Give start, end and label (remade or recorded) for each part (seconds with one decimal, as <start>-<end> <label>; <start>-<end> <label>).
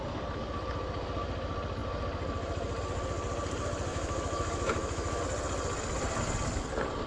0.0-3.9 recorded; 3.9-5.2 remade; 5.2-7.1 recorded